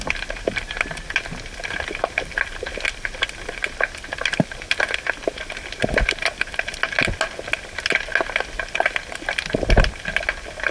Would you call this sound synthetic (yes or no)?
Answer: no